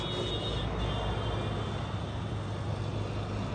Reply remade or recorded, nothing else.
recorded